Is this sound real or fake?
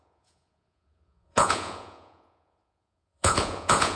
fake